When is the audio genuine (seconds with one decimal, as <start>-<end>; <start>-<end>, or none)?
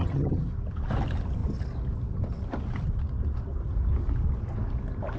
0.5-5.2